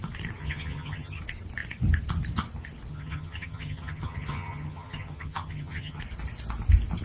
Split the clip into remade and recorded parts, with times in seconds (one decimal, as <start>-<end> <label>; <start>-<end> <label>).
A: 0.0-0.4 recorded; 0.4-1.2 remade; 1.2-2.9 recorded; 2.9-6.0 remade; 6.0-7.0 recorded